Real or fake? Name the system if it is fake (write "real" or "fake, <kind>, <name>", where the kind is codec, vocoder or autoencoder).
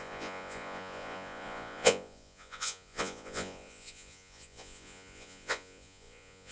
fake, vocoder, Vocos